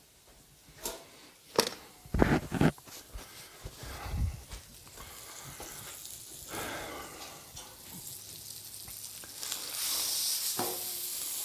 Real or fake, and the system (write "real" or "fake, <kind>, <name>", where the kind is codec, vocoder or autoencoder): real